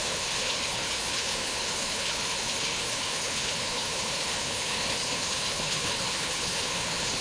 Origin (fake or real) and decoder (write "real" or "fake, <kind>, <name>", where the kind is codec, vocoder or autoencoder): fake, codec, HILCodec